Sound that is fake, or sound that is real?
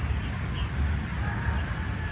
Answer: real